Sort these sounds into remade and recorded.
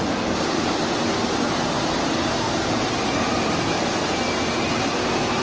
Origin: recorded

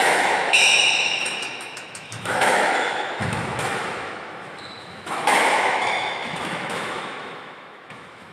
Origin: remade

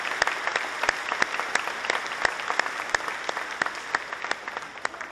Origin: recorded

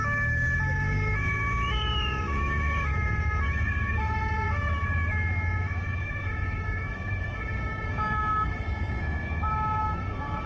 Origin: remade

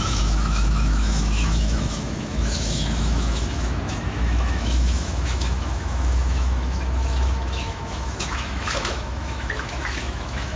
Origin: remade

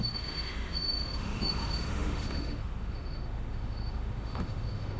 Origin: remade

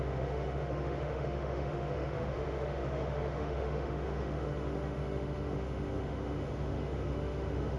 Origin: remade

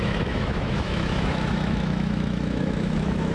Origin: remade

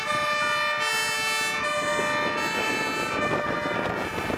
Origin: recorded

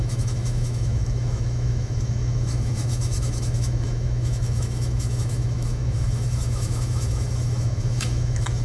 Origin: remade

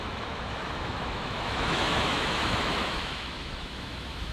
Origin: remade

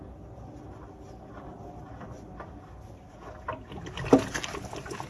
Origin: recorded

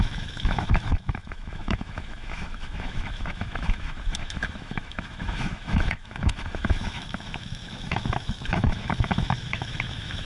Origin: remade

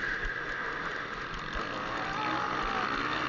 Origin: recorded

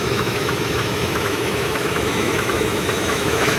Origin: remade